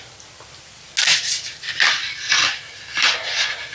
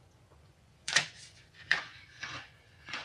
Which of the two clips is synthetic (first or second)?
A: second